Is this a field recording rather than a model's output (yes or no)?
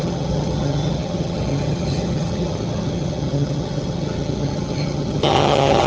no